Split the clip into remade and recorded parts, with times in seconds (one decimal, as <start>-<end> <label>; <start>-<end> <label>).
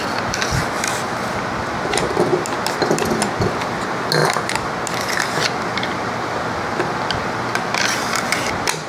0.0-8.9 recorded